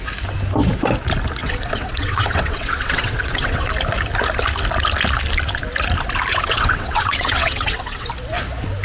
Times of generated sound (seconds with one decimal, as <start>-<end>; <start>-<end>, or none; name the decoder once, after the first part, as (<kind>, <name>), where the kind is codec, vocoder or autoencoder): 1.4-3.7 (vocoder, WaveNeXt); 6.3-8.1